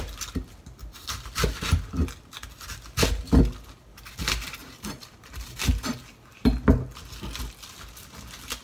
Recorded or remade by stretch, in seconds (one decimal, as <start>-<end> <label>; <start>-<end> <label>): 0.0-0.8 recorded; 0.8-1.4 remade; 1.4-4.6 recorded; 4.6-5.9 remade; 5.9-8.6 recorded